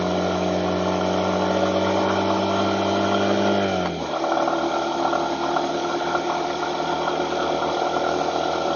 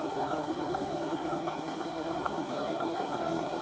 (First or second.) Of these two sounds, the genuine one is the first